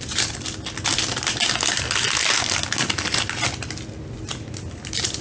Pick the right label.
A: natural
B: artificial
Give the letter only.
A